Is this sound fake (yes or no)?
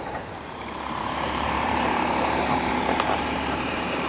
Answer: yes